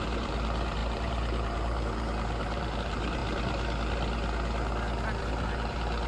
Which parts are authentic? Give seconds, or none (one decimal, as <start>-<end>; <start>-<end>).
3.2-5.2